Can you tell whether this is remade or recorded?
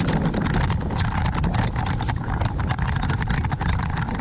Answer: recorded